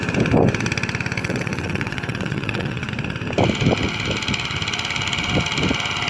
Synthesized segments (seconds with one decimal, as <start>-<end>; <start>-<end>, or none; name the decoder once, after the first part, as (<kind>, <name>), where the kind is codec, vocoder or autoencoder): 1.2-2.9 (vocoder, WaveNeXt)